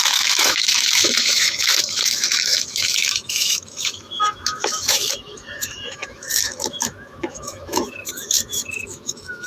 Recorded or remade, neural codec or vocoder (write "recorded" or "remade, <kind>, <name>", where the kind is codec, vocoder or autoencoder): remade, autoencoder, DAC-VAE